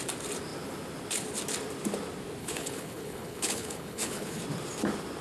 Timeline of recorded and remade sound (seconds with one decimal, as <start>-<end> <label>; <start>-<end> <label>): 0.0-2.4 recorded; 2.4-4.4 remade; 4.4-5.2 recorded